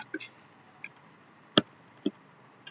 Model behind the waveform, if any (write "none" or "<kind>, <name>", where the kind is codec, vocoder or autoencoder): none